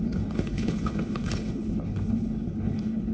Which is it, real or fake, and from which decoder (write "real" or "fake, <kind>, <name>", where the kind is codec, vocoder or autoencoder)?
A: fake, codec, HILCodec